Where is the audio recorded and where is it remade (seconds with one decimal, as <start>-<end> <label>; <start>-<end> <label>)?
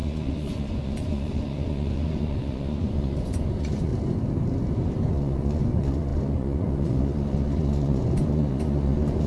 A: 0.0-3.9 remade; 3.9-5.1 recorded; 5.1-9.3 remade